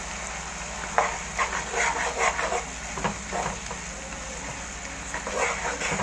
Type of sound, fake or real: real